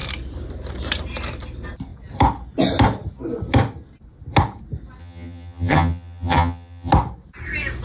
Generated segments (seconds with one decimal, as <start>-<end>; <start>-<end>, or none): 5.0-6.9

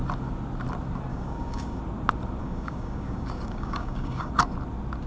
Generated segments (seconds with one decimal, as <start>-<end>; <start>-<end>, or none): 1.1-1.8; 2.4-4.3

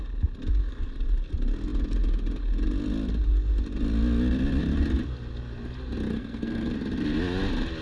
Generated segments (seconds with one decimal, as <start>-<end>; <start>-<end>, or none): 6.1-6.7

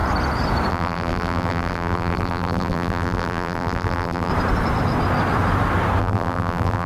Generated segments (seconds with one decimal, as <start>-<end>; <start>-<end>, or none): 0.7-4.3; 6.0-6.9

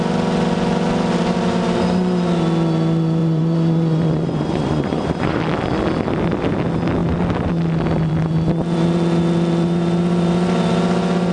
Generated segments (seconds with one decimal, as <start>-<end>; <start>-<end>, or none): 3.2-5.4

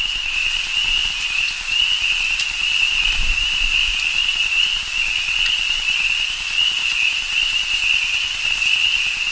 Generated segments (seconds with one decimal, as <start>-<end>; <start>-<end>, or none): 6.6-7.2

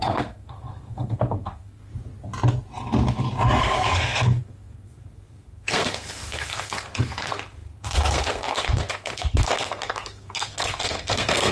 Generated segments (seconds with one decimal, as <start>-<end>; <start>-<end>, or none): 0.0-1.9; 3.6-11.5

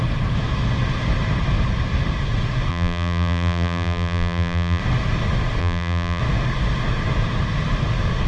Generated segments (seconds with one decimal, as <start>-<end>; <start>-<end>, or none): 2.7-4.8; 5.6-6.2